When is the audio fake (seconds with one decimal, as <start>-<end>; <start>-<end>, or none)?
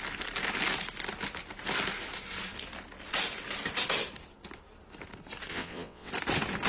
5.5-6.1